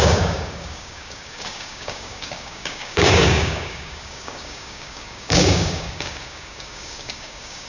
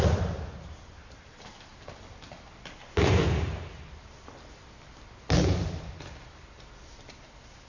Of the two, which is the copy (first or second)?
first